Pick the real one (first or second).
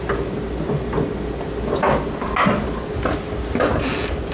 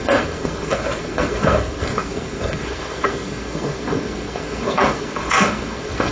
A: first